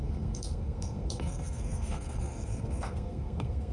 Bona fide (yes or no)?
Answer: no